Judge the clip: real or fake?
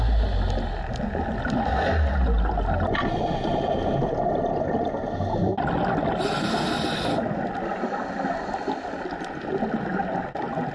real